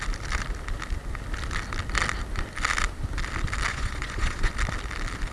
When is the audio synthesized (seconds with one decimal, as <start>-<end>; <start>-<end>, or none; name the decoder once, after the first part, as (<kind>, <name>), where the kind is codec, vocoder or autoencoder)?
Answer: 3.7-4.5 (vocoder, Vocos)